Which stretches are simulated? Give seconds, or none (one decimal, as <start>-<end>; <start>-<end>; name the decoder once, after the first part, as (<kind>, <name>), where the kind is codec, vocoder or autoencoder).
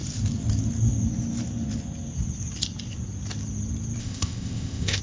4.0-5.0 (codec, ZipCodec)